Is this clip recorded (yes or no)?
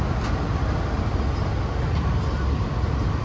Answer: yes